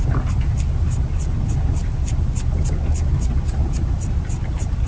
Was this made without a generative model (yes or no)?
yes